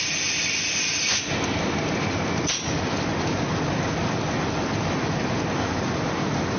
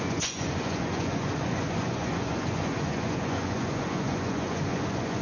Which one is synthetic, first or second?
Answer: second